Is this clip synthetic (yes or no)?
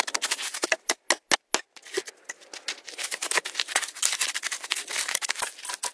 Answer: no